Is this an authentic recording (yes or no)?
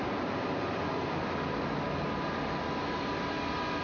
yes